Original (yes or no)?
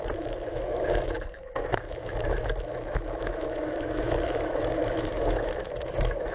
no